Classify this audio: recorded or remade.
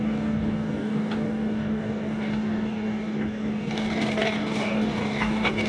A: remade